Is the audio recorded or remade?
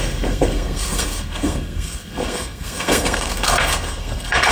remade